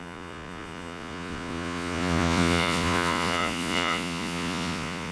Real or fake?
fake